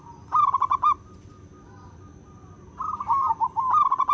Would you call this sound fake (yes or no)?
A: no